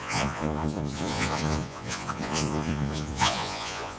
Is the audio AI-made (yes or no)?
yes